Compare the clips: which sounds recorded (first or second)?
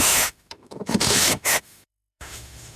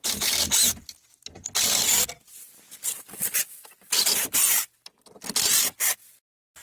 second